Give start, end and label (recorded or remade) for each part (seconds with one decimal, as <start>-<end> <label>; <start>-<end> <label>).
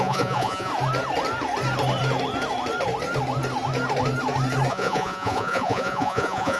0.0-0.7 remade; 0.7-4.7 recorded; 4.7-6.6 remade